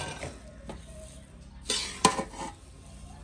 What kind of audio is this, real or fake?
real